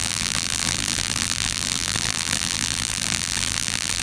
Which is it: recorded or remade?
remade